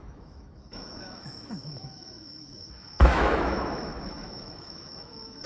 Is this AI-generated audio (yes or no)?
yes